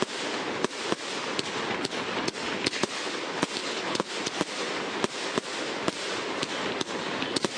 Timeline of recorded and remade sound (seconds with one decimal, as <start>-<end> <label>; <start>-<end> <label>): 0.0-3.6 recorded; 3.6-4.1 remade; 4.1-7.6 recorded